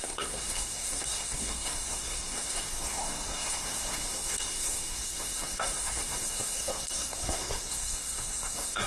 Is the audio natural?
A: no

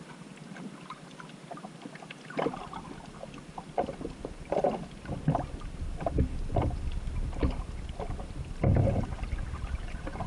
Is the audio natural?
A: yes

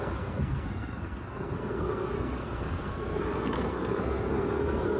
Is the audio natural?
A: no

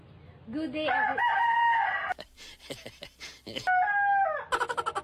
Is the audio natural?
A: yes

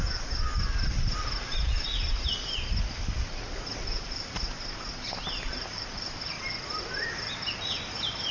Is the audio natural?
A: yes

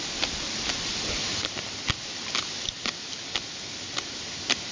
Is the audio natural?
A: yes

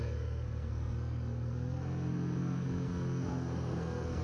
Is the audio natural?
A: no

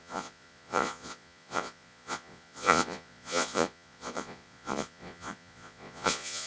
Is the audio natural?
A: no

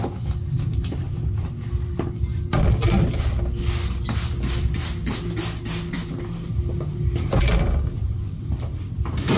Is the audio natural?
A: yes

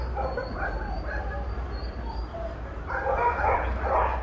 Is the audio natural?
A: yes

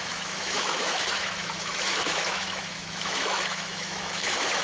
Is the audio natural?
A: no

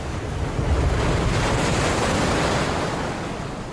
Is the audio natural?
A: yes